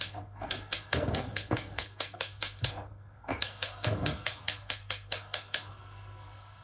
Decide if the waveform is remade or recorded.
remade